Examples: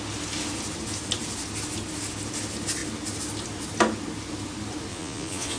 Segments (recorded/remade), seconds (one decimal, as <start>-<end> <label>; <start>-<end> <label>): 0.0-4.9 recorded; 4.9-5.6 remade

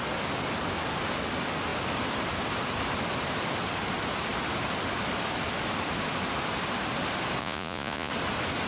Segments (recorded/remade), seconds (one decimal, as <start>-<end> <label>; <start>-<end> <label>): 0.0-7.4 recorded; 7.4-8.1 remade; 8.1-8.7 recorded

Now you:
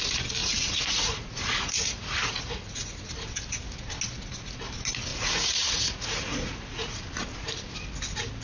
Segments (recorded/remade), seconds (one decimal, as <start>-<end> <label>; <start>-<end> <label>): 0.0-0.4 recorded; 0.4-3.1 remade; 3.1-5.1 recorded; 5.1-7.0 remade; 7.0-8.4 recorded

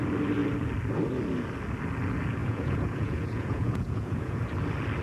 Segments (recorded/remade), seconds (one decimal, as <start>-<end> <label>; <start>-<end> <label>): 0.0-2.4 recorded; 2.4-4.4 remade; 4.4-5.0 recorded

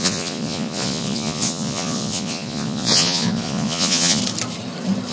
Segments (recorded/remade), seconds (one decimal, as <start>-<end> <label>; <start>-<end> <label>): 0.0-4.2 remade; 4.2-5.1 recorded